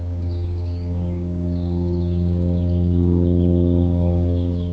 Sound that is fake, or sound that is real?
fake